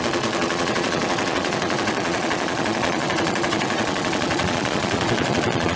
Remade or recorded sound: remade